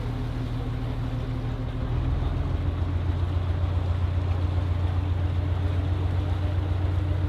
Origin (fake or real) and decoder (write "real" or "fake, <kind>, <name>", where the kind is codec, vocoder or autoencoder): real